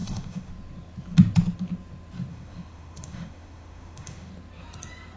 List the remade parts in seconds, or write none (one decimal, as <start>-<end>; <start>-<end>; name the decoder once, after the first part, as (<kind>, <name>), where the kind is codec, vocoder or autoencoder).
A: 0.0-0.5 (autoencoder, DAC-VAE); 2.3-4.3